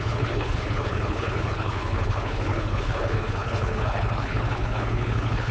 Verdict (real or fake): fake